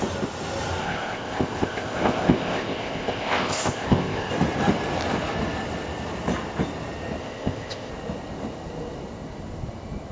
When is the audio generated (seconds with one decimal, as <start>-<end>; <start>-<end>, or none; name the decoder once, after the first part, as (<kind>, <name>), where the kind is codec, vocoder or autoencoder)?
0.8-4.3 (codec, ZipCodec); 7.2-7.9